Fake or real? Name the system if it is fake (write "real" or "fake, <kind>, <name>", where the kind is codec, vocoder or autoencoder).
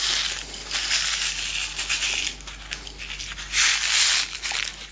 real